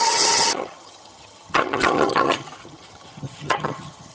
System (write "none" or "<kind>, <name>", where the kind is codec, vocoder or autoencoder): vocoder, HiFi-GAN